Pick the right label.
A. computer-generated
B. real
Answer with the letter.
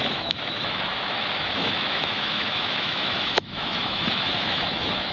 A